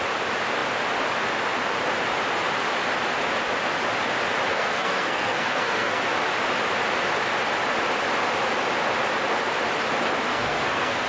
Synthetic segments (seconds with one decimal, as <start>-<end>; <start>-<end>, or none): 4.5-6.0; 10.3-11.1